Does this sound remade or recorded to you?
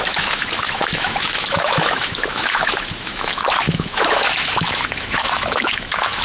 remade